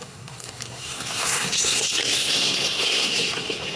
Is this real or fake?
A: fake